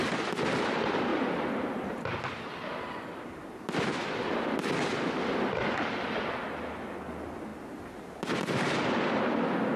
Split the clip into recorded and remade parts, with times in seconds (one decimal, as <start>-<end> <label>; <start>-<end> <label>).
0.0-1.1 recorded; 1.1-2.2 remade; 2.2-9.8 recorded